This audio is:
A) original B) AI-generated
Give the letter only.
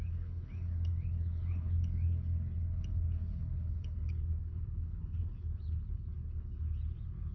B